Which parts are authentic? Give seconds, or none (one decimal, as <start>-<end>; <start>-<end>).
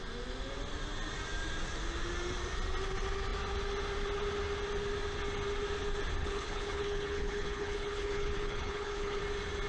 0.0-6.2; 9.2-9.7